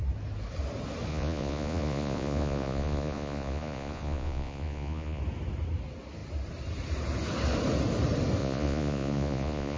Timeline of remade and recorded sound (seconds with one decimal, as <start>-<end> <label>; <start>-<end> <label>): 0.0-1.1 recorded; 1.1-5.2 remade; 5.2-8.4 recorded; 8.4-9.8 remade